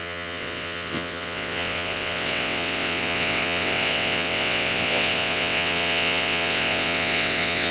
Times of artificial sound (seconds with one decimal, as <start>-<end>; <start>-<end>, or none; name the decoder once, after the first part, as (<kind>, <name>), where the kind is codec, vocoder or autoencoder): 0.0-7.7 (vocoder, WaveNeXt)